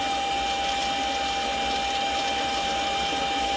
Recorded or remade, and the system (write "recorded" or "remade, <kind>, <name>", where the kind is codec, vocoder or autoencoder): recorded